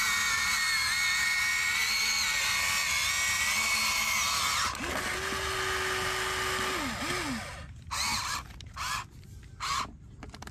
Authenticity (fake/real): real